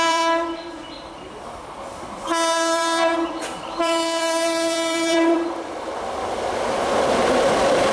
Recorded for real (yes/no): no